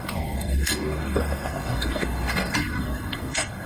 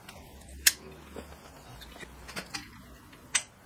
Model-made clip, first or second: first